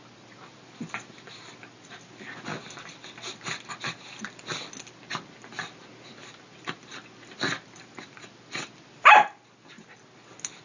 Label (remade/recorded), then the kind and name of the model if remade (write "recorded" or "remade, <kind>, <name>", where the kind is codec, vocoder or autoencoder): recorded